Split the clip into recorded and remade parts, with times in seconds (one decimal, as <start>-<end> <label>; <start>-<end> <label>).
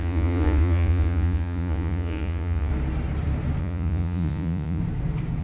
0.0-2.7 remade; 2.7-3.6 recorded; 3.6-4.8 remade; 4.8-5.4 recorded